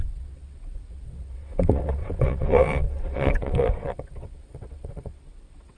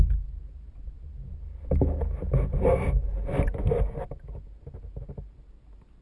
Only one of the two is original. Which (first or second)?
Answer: second